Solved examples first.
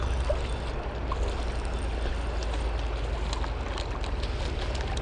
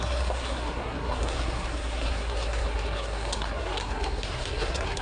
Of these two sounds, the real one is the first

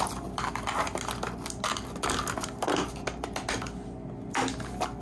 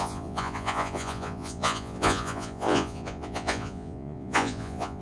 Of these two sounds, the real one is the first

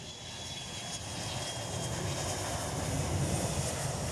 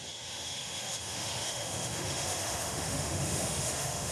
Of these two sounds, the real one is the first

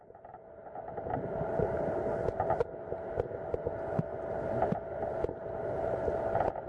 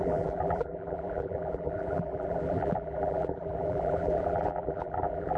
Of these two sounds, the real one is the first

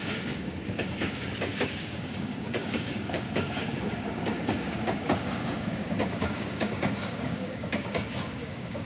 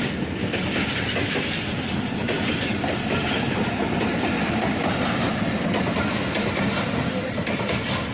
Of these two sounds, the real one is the second